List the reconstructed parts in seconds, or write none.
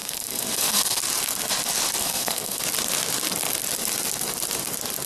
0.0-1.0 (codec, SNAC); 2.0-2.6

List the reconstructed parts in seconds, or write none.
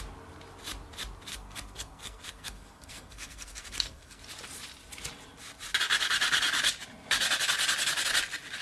1.3-4.2 (codec, SNAC)